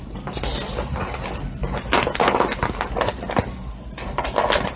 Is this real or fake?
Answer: real